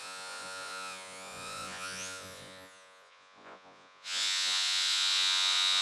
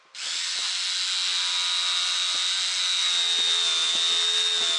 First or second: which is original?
second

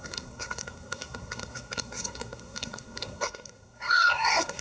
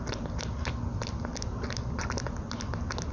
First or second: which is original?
second